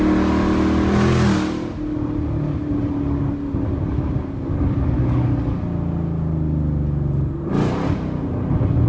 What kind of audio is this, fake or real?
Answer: real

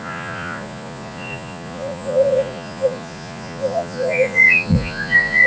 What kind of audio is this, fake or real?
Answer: fake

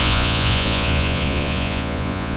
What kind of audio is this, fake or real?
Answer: fake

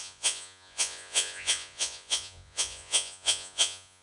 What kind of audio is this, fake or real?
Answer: fake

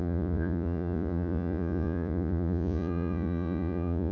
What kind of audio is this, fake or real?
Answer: fake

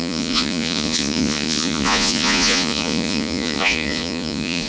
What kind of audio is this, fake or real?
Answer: fake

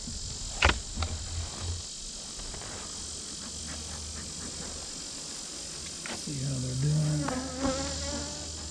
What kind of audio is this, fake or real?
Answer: real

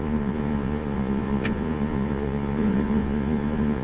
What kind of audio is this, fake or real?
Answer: fake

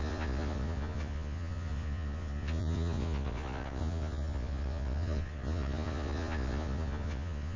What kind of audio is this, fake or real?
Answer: fake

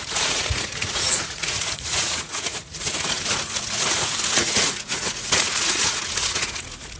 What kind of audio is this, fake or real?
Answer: fake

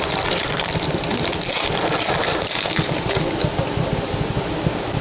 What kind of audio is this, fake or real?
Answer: real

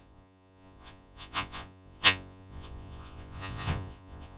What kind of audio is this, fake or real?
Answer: fake